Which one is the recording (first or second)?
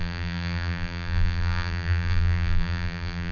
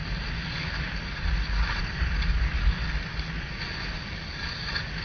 second